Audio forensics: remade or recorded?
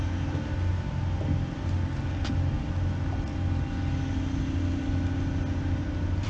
recorded